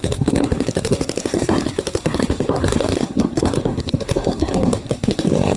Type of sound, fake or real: fake